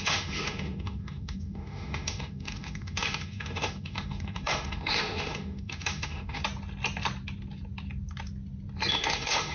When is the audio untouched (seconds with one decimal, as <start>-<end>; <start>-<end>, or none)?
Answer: 6.4-8.9